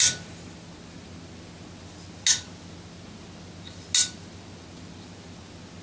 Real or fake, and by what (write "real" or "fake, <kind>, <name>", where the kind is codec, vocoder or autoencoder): real